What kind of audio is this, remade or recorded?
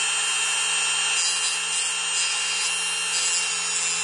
recorded